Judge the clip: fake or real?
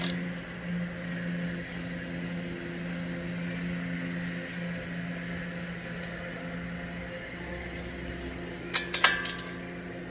real